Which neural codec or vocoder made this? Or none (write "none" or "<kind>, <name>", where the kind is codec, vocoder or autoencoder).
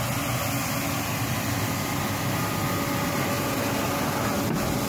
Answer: none